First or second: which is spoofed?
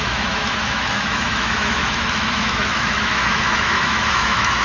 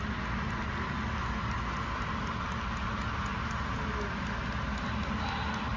first